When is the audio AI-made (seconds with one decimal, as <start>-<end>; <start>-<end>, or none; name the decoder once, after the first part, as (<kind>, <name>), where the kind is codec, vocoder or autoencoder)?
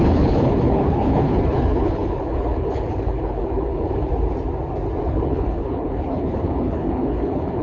0.0-4.1 (codec, HILCodec); 5.0-7.6